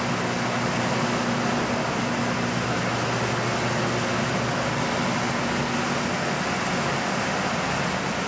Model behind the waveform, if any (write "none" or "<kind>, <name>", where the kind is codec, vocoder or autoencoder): none